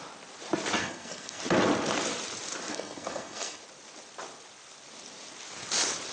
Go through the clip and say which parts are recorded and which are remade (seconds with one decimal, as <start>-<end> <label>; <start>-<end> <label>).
0.0-0.8 recorded; 0.8-1.4 remade; 1.4-2.7 recorded; 2.7-3.6 remade; 3.6-6.1 recorded